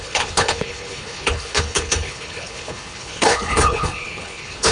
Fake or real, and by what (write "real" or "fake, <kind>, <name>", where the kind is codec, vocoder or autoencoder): fake, codec, HILCodec